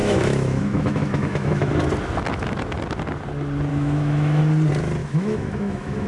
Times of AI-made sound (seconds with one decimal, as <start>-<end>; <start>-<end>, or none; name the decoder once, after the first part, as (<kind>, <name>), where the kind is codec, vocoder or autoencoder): 0.0-1.7 (autoencoder, DAC-VAE); 3.7-4.4; 5.0-6.1